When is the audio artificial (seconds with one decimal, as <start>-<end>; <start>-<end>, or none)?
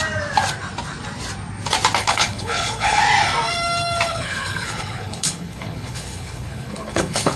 2.0-3.0; 4.1-7.4